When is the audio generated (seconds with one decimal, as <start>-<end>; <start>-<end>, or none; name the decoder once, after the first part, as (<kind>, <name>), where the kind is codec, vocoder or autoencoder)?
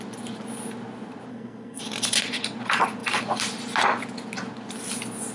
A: 1.3-1.8 (codec, SNAC)